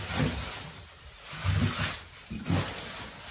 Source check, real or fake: real